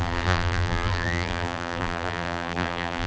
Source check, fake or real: fake